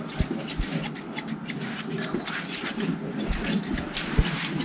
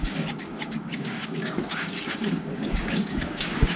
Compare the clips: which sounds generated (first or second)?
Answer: second